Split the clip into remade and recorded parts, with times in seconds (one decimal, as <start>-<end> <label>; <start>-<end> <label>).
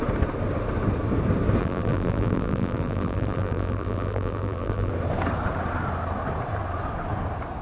0.0-1.6 recorded; 1.6-4.9 remade; 4.9-7.6 recorded